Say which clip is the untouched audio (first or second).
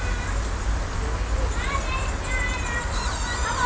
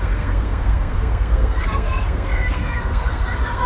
first